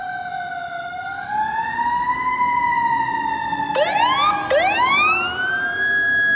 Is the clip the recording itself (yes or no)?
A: yes